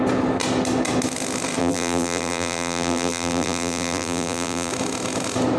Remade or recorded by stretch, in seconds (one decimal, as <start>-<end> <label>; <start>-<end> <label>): 0.0-1.6 recorded; 1.6-4.7 remade; 4.7-5.6 recorded